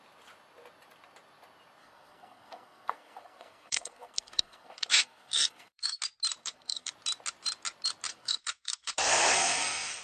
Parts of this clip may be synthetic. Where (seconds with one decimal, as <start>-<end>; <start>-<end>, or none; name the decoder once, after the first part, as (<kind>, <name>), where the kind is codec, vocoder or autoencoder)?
1.8-6.0 (codec, SNAC); 6.4-6.9; 8.1-10.0